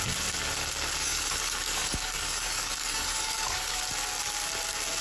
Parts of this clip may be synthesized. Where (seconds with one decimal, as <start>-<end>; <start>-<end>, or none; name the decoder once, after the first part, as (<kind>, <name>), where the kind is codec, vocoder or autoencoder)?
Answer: 1.0-3.8 (codec, DAC)